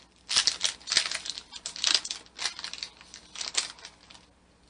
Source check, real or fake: real